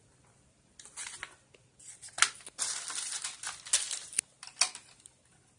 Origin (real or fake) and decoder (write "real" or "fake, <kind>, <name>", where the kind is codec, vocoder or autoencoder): real